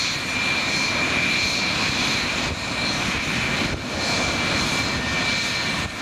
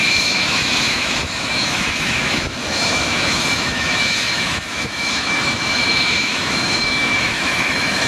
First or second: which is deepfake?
second